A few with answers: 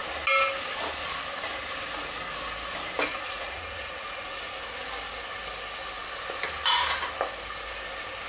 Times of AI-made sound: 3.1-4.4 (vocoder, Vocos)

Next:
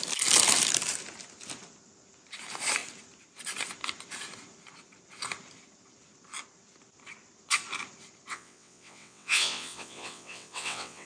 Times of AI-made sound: 8.3-11.1 (vocoder, WaveNeXt)

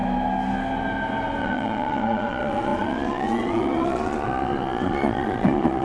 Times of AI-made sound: 1.4-5.8 (vocoder, Vocos)

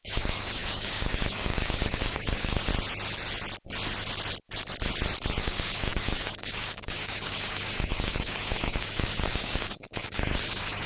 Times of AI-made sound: 0.0-2.7 (codec, DAC); 5.4-10.9

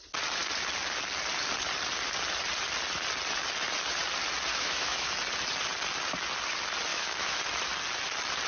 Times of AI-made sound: 4.5-5.1 (autoencoder, DAC-VAE); 6.9-7.4

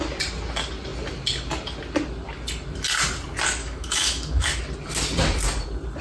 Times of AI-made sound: 3.6-4.6 (autoencoder, DAC-VAE)

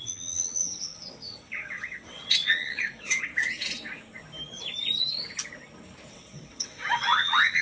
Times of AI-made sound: 0.0-3.3 (vocoder, WaveNeXt); 6.1-7.6

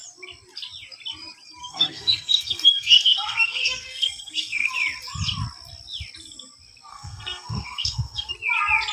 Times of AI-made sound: 1.6-4.7 (codec, SNAC); 6.9-8.3